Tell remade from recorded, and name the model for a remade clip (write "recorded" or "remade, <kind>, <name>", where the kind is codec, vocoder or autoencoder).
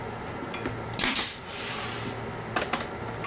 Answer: recorded